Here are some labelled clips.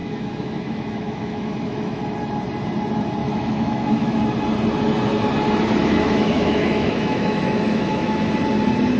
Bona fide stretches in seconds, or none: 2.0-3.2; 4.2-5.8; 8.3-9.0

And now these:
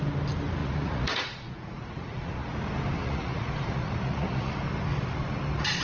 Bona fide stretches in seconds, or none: 0.0-0.6; 2.5-3.0; 4.5-5.8

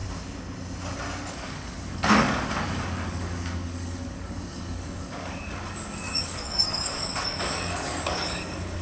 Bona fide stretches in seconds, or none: 0.0-1.3

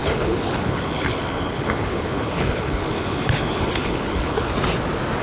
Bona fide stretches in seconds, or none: 4.5-5.2

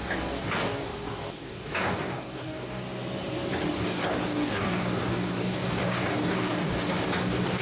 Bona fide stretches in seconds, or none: 2.8-3.8

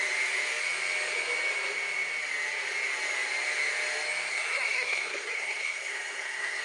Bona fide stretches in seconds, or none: 0.0-4.3